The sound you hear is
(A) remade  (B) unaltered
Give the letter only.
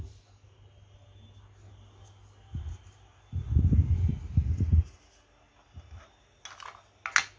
B